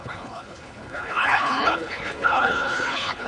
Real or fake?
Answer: fake